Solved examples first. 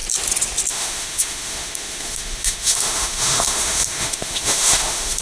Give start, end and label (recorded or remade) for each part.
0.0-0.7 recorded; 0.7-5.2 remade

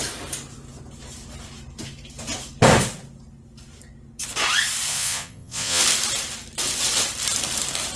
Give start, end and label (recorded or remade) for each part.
0.0-4.9 recorded; 4.9-5.8 remade; 5.8-8.0 recorded